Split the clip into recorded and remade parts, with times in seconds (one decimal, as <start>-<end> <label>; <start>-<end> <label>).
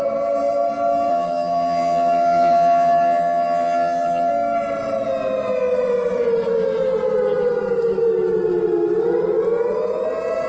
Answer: 0.0-1.1 recorded; 1.1-4.3 remade; 4.3-10.5 recorded